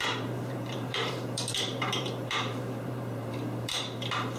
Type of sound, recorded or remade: remade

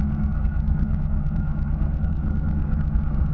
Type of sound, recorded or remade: remade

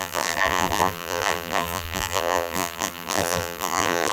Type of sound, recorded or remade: remade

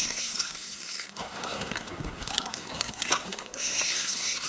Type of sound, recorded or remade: remade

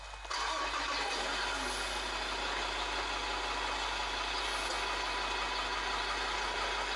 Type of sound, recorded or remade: recorded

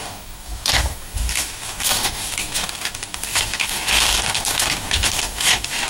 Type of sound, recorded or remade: remade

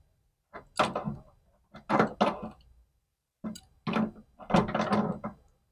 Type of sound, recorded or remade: recorded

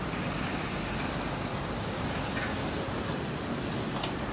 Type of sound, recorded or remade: recorded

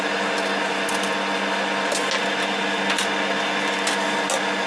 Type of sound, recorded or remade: recorded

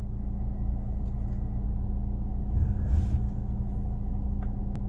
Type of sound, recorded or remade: recorded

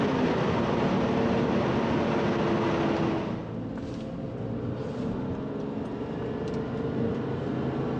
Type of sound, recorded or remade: recorded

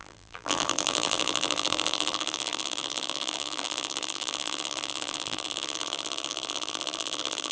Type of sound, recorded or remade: remade